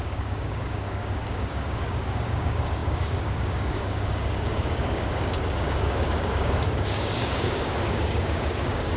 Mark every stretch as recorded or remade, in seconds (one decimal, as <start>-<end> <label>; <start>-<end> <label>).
0.0-9.0 remade